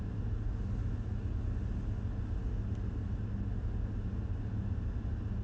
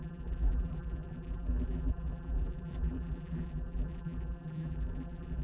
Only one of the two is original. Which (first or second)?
first